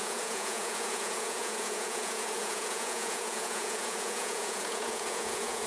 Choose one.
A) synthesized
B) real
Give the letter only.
A